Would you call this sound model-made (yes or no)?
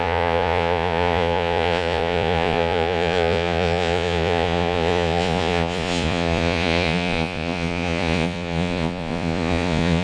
yes